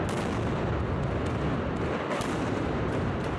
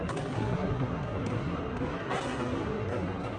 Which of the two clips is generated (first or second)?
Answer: second